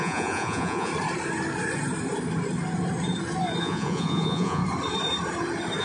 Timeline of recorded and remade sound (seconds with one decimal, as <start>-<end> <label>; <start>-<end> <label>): 0.0-0.9 remade; 0.9-3.6 recorded; 3.6-4.6 remade; 4.6-5.8 recorded